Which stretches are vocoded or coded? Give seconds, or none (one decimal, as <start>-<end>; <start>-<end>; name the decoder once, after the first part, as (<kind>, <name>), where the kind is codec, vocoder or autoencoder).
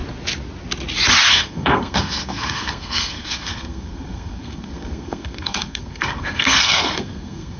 1.3-7.6 (codec, SNAC)